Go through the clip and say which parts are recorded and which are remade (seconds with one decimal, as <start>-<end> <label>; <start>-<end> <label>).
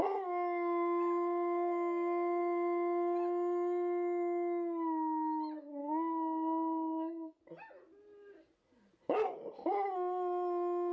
0.0-5.8 recorded; 5.8-7.4 remade; 7.4-10.9 recorded